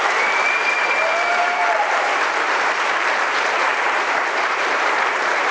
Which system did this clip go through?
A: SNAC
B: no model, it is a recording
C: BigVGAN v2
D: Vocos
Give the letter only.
C